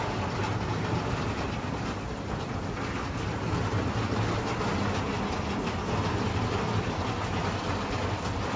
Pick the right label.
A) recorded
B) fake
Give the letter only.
A